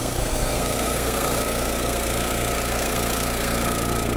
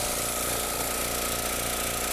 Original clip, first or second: second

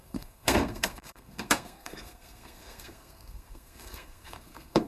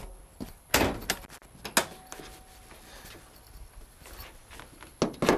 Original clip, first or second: second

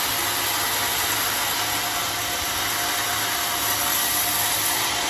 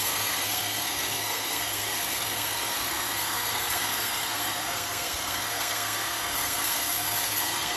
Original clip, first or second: first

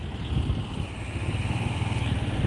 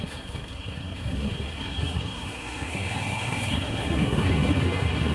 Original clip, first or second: first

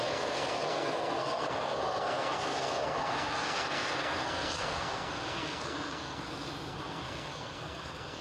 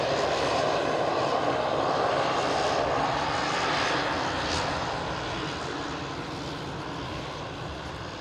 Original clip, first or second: second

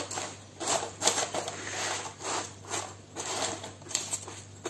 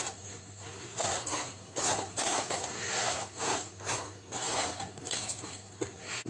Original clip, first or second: first